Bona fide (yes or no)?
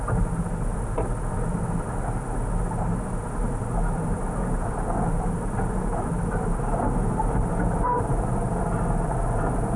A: yes